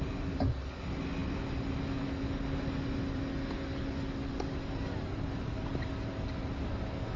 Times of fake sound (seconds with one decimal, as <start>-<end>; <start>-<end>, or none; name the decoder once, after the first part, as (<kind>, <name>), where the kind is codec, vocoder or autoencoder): none